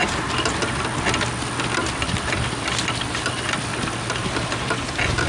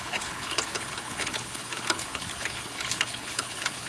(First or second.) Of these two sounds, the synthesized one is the second